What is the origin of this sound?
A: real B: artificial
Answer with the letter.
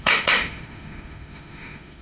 B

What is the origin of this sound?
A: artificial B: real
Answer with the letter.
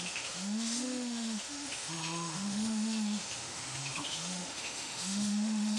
A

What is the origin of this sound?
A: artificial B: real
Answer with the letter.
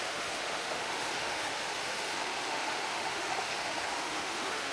A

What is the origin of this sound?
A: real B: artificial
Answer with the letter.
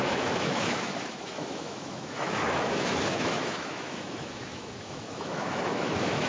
B